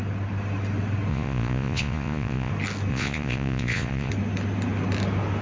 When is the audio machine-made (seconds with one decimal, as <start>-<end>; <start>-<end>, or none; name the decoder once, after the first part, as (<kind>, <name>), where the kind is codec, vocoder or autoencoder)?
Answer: 1.1-2.5 (vocoder, Vocos); 2.9-4.1